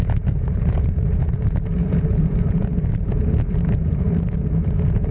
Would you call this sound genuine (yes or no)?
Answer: no